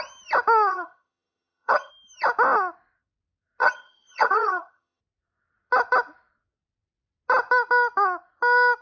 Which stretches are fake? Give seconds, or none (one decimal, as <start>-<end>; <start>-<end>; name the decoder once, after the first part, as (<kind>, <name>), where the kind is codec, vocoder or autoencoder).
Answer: 0.7-1.9 (vocoder, HiFi-GAN); 3.6-5.0